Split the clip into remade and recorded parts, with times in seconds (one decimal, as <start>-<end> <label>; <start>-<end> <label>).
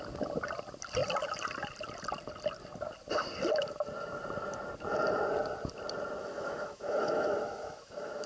0.0-6.2 recorded; 6.2-8.3 remade